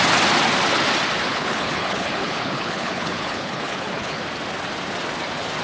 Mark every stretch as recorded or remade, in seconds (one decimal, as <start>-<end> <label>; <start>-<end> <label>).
0.0-1.3 recorded; 1.3-4.2 remade; 4.2-5.6 recorded